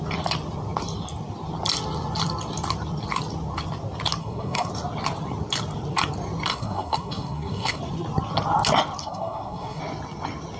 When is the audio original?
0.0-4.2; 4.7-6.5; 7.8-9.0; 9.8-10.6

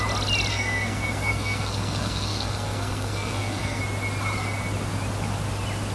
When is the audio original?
0.0-0.5; 3.8-5.9

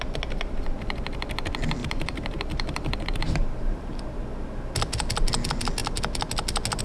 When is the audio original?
0.0-1.8; 4.2-6.8

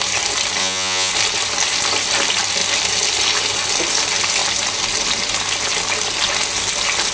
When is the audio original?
0.0-0.6; 1.1-7.1

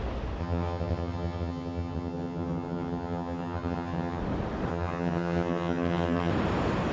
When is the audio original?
0.0-0.4; 4.2-4.7; 6.3-6.9

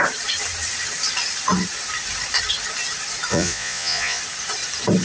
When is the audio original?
0.0-3.3; 4.2-5.0

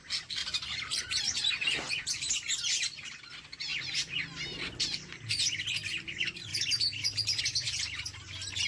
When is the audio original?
0.0-0.4; 1.5-6.5; 7.4-8.7

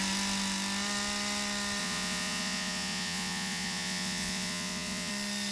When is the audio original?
0.0-1.8; 5.1-5.5